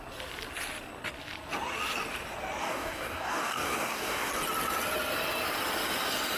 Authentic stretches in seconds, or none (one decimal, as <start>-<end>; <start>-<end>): 0.0-2.6; 4.3-6.4